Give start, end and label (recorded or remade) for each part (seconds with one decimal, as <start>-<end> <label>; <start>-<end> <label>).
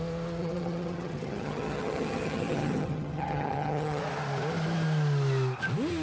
0.0-0.4 recorded; 0.4-4.0 remade; 4.0-6.0 recorded